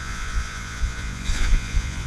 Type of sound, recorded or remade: remade